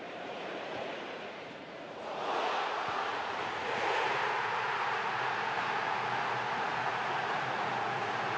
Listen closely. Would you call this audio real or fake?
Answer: fake